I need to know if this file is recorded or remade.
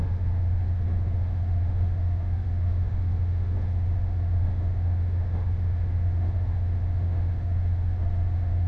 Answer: remade